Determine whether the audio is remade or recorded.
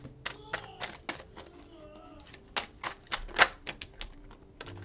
recorded